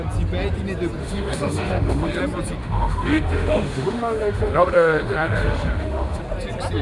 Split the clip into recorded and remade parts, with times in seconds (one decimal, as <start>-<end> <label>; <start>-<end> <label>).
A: 0.0-1.0 recorded; 1.0-2.2 remade; 2.2-2.6 recorded; 2.6-6.2 remade; 6.2-6.8 recorded